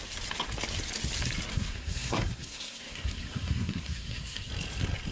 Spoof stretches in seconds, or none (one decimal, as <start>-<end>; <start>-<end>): 1.5-4.5